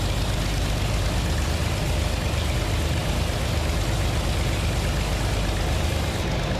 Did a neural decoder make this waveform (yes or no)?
no